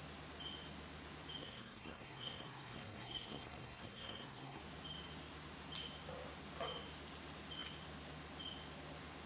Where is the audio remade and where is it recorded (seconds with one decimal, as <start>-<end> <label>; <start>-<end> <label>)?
0.0-1.4 recorded; 1.4-4.6 remade; 4.6-9.3 recorded